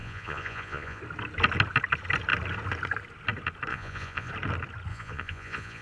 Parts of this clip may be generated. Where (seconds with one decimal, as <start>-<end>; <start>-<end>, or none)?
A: 0.0-1.0; 3.7-4.3; 4.9-5.8